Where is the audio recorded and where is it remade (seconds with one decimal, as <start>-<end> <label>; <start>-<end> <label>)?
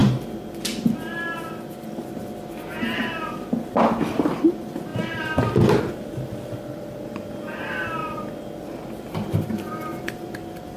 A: 0.0-10.8 recorded